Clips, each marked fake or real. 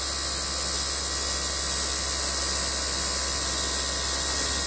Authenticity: real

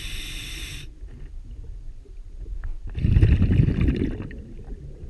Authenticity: real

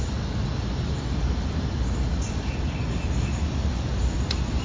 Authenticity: real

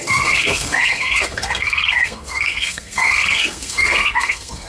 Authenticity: fake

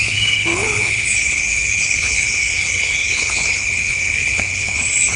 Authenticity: fake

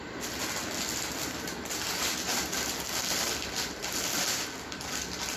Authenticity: real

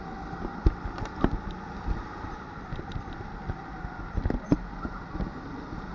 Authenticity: real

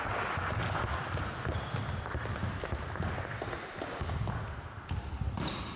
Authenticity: real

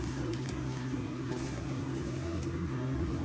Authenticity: fake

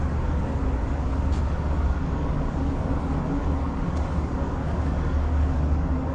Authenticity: fake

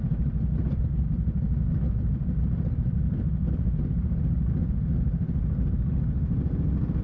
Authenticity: real